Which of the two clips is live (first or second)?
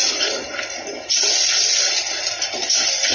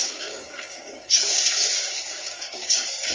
first